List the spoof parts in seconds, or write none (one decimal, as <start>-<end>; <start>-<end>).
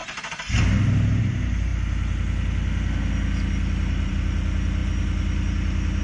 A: none